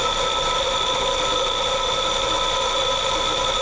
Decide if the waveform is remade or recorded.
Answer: recorded